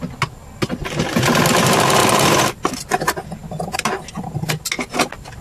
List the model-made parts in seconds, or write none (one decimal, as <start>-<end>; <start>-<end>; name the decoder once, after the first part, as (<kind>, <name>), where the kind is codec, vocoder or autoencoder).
none